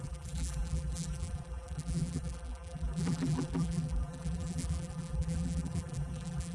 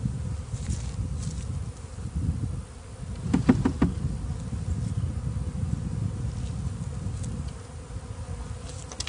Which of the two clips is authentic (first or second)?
second